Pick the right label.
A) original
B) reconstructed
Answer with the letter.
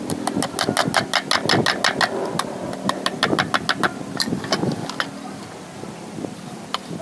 A